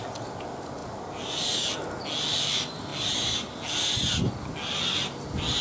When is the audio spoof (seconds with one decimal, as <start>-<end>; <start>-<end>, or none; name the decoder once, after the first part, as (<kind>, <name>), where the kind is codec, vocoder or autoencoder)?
none